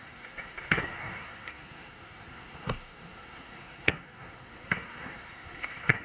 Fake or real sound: fake